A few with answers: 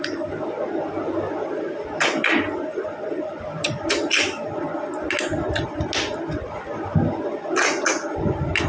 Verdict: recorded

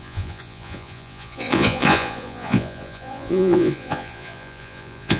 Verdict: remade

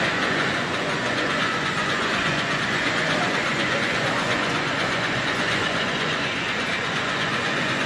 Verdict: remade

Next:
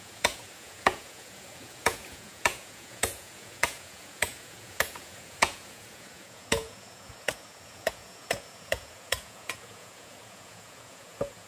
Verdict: remade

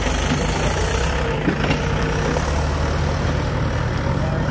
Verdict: recorded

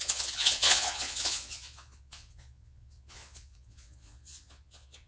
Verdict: remade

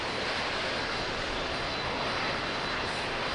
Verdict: recorded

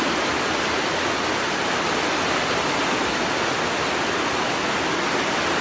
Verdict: recorded